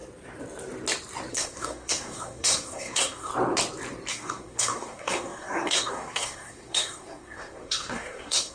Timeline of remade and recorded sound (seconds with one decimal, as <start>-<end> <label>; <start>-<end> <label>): 0.0-1.3 recorded; 1.3-3.3 remade; 3.3-4.1 recorded; 4.1-8.5 remade